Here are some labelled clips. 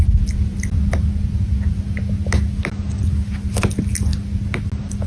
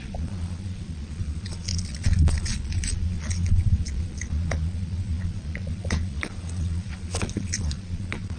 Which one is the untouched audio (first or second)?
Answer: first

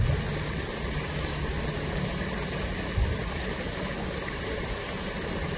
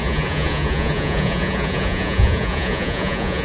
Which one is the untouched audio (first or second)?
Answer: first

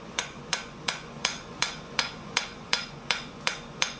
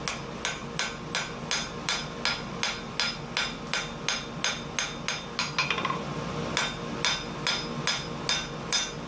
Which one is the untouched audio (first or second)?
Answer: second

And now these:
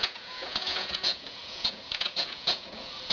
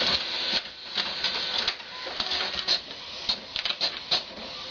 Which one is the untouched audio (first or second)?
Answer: second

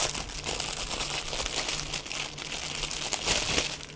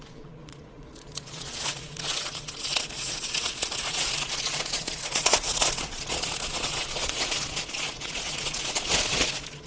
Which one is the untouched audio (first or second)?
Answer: first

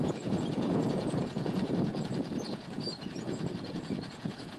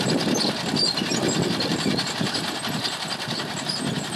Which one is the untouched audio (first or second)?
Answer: second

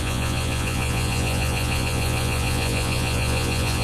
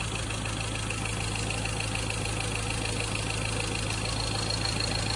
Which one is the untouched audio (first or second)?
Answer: second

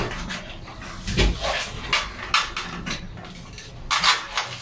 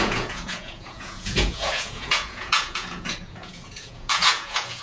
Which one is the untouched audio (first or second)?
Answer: first